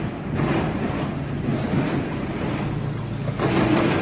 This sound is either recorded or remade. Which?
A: recorded